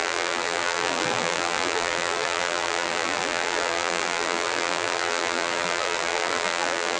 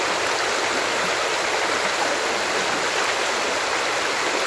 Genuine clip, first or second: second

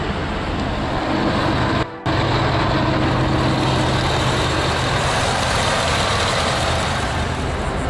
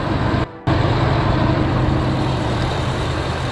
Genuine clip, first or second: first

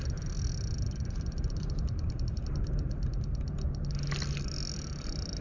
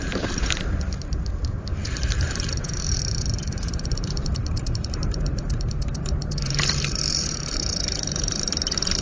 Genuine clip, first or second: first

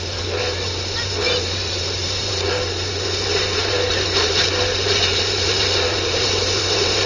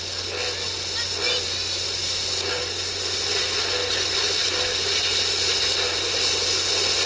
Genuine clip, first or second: second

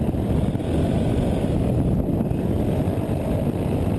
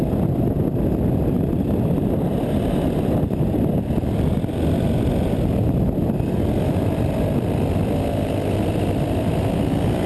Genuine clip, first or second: second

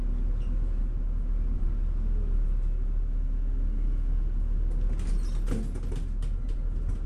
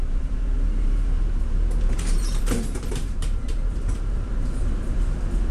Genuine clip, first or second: first